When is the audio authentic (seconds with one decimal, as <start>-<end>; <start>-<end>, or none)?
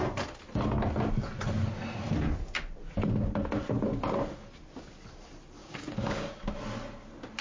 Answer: 0.0-5.6; 6.3-7.4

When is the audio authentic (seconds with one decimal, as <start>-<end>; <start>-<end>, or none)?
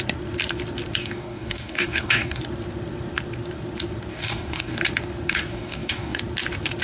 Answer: 0.0-1.0; 2.4-4.1; 4.8-5.5; 6.2-6.8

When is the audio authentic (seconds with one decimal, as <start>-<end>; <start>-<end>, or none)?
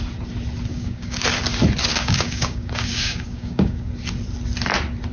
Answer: 0.0-0.7; 1.2-1.9; 3.9-5.1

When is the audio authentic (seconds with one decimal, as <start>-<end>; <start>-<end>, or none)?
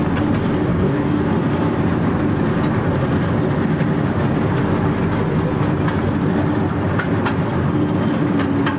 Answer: 0.0-0.7; 1.2-8.8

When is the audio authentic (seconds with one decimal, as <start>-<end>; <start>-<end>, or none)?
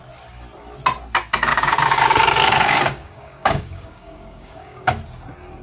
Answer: 0.0-1.5; 4.9-5.6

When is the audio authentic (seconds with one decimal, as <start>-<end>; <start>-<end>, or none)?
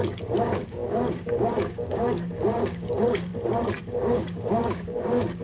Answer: 3.3-3.9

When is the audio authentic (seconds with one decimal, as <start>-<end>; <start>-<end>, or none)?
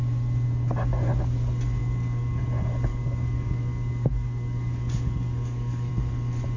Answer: 0.0-1.8; 2.4-2.9; 5.9-6.6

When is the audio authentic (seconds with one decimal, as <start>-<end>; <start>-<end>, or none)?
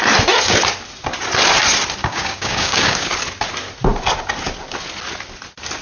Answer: 0.0-2.0; 3.1-5.8